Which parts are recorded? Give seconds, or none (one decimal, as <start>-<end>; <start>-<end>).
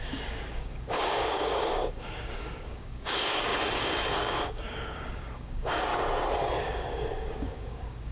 3.5-4.1; 5.9-6.6